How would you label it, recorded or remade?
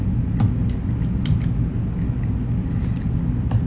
recorded